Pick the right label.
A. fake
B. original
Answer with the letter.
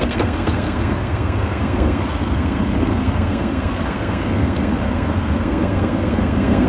A